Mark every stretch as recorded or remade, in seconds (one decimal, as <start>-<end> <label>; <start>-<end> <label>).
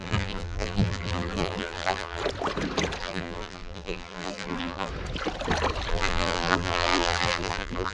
0.0-2.2 remade; 2.2-3.0 recorded; 3.0-4.9 remade; 4.9-5.9 recorded; 5.9-7.9 remade